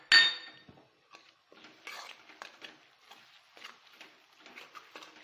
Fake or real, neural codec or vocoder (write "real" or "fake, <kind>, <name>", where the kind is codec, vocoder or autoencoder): real